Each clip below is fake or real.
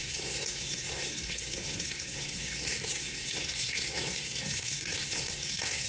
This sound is fake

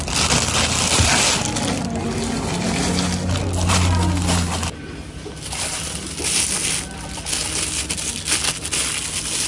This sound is real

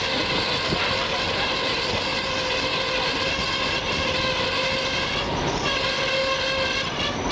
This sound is real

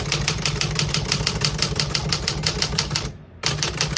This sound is real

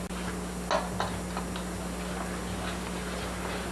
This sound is real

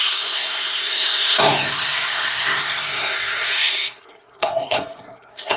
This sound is fake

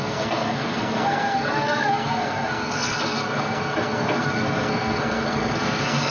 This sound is fake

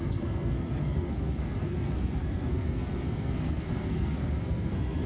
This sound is fake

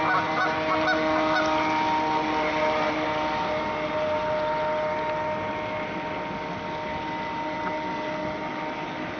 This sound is real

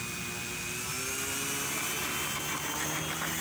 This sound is real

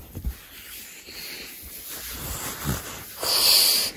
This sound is real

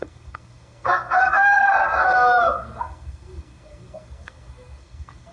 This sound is fake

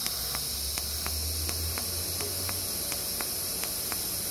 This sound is real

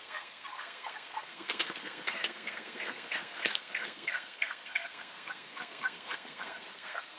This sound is fake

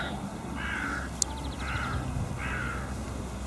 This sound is real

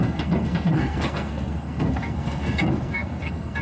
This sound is fake